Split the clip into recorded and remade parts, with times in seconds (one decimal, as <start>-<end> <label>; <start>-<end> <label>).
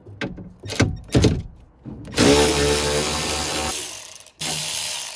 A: 0.0-5.2 recorded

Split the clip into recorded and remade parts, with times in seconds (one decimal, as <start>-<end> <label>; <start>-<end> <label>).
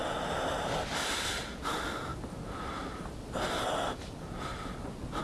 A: 0.0-5.2 recorded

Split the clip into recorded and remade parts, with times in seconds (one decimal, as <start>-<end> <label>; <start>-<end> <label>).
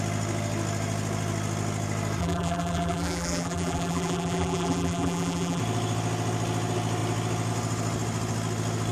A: 0.0-2.2 recorded; 2.2-5.6 remade; 5.6-8.9 recorded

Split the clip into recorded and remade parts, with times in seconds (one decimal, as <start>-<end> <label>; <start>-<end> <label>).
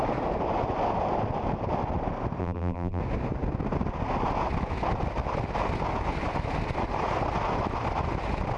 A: 0.0-2.4 recorded; 2.4-3.0 remade; 3.0-8.6 recorded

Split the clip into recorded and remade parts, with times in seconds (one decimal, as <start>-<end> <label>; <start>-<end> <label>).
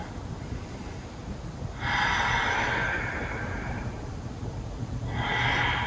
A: 0.0-0.8 remade; 0.8-4.3 recorded; 4.3-5.9 remade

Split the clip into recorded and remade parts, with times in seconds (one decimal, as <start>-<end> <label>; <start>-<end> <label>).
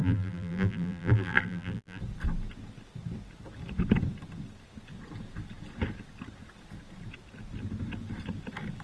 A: 0.0-2.0 remade; 2.0-8.8 recorded